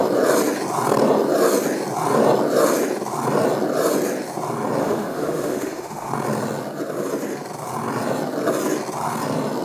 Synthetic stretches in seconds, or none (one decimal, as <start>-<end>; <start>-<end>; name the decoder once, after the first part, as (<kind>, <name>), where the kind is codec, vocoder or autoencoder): 4.8-6.1 (autoencoder, DAC-VAE)